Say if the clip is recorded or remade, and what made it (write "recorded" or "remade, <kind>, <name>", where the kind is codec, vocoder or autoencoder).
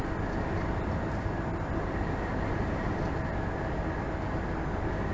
recorded